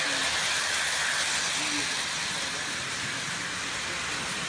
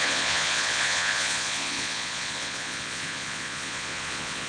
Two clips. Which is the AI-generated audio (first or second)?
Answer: second